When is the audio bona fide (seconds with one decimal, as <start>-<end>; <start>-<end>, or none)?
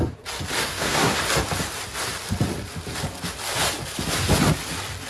0.0-0.6; 1.2-5.1